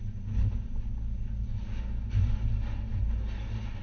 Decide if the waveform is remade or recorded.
recorded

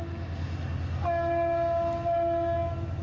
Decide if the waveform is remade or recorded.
recorded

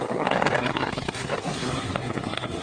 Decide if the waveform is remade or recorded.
remade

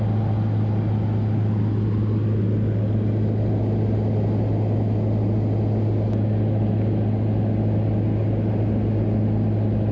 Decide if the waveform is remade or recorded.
recorded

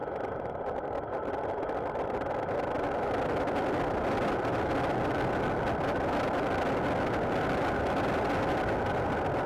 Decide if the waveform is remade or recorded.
recorded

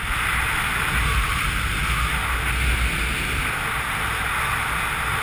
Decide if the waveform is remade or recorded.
recorded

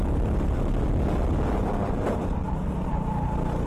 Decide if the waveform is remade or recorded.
recorded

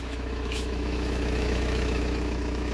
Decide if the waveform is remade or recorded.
remade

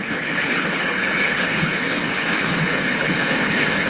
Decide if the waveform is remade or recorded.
remade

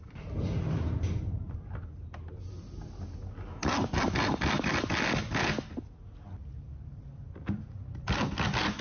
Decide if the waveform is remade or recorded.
recorded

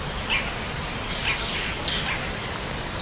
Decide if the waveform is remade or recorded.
recorded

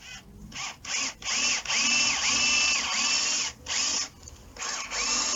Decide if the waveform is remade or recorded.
recorded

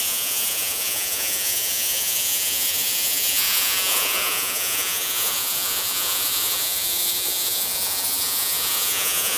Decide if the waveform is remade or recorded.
remade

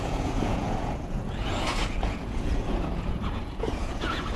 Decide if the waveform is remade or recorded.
remade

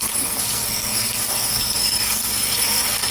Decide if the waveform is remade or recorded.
remade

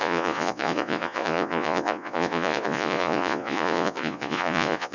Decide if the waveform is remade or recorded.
remade